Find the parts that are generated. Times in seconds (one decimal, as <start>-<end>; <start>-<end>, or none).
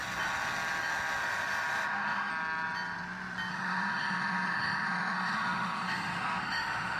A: 1.2-2.3; 3.5-7.0